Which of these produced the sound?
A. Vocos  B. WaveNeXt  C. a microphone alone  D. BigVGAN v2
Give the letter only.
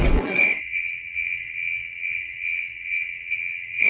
B